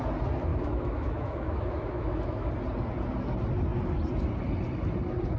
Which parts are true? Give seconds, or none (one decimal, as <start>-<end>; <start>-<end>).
0.0-0.5; 2.5-5.4